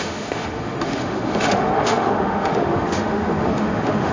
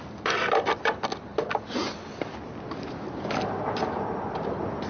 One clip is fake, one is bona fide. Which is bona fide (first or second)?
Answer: second